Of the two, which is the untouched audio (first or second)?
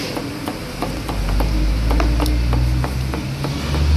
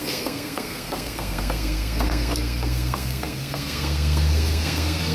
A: first